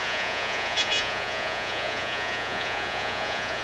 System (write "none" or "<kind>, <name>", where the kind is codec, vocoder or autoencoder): vocoder, Vocos